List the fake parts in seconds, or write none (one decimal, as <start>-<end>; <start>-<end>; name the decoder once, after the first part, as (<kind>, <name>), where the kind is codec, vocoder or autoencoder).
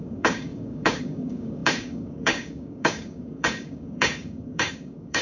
0.0-5.2 (codec, DAC)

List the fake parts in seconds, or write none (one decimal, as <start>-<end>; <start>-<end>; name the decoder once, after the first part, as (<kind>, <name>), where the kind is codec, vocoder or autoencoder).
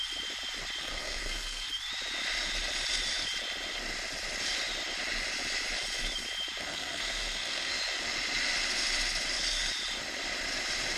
0.8-1.7 (codec, SNAC); 6.6-7.7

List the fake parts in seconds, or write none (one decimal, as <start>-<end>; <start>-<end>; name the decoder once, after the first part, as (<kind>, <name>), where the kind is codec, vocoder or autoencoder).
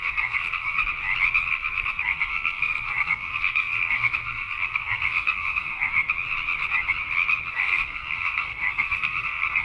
0.0-0.8 (codec, SNAC); 1.5-6.0; 7.5-9.6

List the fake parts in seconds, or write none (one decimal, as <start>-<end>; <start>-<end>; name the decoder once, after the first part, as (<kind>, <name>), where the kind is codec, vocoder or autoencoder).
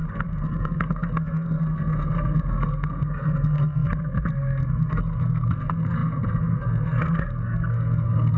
0.0-8.4 (codec, SNAC)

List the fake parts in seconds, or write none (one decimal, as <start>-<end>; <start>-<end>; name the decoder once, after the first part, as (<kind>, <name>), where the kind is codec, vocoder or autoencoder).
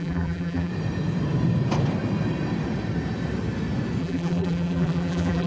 0.0-0.7 (vocoder, BigVGAN v2); 4.0-5.5